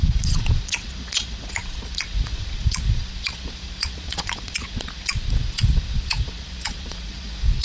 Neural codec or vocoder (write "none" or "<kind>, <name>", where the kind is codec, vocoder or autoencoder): vocoder, Vocos